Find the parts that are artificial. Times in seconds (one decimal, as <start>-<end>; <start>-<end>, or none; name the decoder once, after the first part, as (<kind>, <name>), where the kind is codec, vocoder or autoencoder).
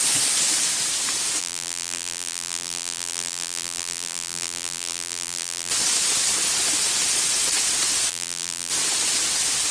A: 1.4-5.7 (vocoder, BigVGAN v2); 8.1-8.7